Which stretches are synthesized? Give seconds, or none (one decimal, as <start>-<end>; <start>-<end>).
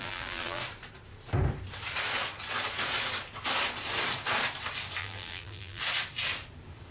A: 0.0-0.6; 5.0-5.8